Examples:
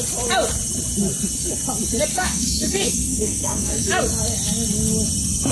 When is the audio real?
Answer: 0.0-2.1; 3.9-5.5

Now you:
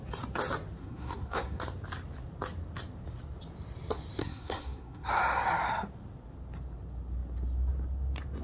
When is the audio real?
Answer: 0.0-0.8; 1.6-4.2; 5.1-8.4

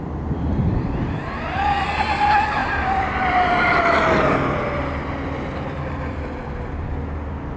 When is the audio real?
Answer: 0.0-0.5; 1.1-2.6; 6.4-7.6

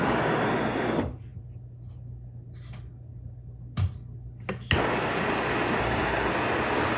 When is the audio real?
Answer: 0.0-5.8; 6.3-7.0

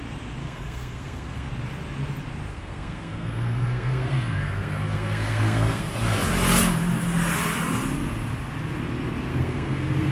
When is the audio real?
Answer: 0.0-0.4; 1.5-2.5; 5.9-9.3

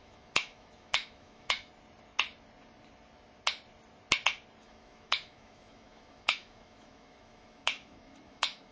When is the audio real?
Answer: 1.7-4.6

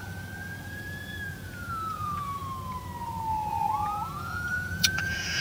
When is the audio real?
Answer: 0.0-0.6; 2.4-3.5